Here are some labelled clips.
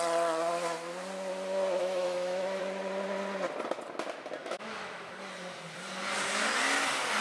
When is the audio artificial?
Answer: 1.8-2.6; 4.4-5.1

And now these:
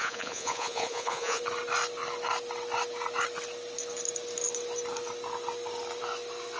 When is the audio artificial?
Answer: 0.0-1.4